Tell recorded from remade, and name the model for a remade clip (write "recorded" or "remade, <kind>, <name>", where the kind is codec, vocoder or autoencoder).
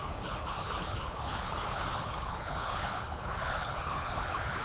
remade, codec, HILCodec